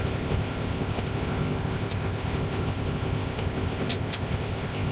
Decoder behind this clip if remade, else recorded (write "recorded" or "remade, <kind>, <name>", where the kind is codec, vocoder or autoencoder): remade, codec, ZipCodec